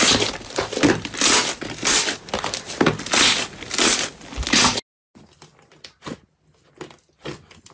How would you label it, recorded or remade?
recorded